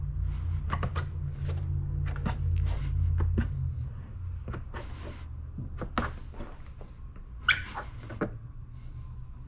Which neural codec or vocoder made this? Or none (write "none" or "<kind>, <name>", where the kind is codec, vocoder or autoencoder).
none